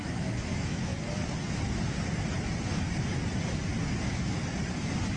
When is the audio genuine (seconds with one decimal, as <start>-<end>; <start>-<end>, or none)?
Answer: 0.9-4.0; 4.4-5.2